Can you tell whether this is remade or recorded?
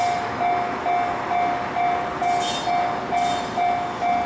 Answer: recorded